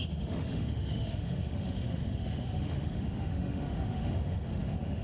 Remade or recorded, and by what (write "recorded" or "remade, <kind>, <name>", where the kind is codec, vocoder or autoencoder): remade, autoencoder, DAC-VAE